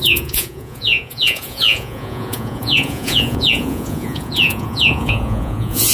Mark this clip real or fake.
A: fake